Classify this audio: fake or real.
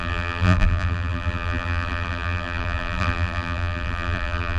fake